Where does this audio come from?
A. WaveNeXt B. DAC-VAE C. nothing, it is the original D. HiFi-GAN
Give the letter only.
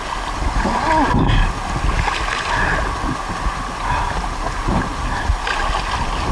C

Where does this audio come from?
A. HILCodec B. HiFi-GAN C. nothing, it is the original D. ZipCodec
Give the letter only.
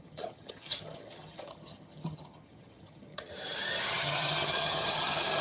B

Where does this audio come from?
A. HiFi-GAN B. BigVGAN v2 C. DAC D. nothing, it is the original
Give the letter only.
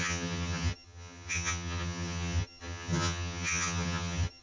A